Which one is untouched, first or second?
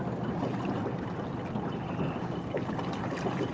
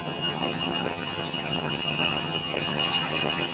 first